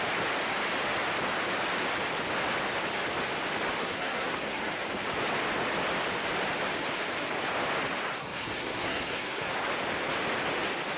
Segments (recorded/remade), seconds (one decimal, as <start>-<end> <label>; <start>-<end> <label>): 0.0-3.8 recorded; 3.8-4.7 remade; 4.7-8.1 recorded; 8.1-9.5 remade; 9.5-11.0 recorded